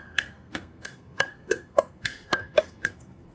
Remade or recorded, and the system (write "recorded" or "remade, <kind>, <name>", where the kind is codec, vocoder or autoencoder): remade, codec, SNAC